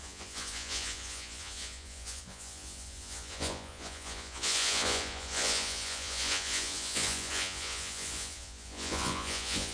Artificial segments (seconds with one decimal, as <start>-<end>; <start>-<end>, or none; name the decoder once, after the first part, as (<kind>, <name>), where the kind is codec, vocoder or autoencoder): 0.0-9.7 (vocoder, Vocos)